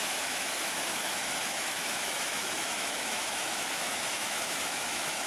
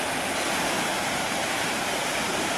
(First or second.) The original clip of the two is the second